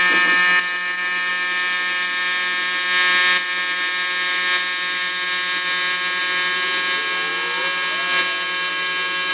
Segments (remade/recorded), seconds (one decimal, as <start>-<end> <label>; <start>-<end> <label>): 0.0-9.3 recorded